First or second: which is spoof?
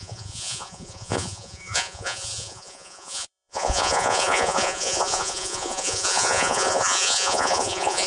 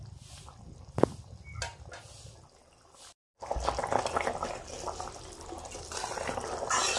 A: first